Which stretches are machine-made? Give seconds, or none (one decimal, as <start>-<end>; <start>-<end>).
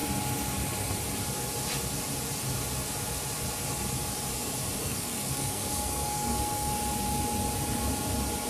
4.8-6.7